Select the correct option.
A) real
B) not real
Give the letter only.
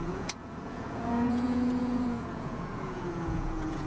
B